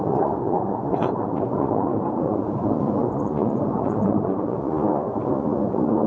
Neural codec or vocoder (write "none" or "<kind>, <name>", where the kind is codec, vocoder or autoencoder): vocoder, Vocos